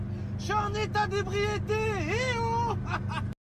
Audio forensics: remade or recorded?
recorded